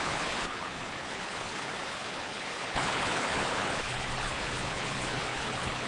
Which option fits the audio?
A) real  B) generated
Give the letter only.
B